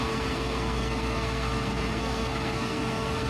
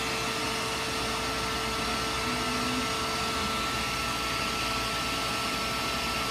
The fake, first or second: first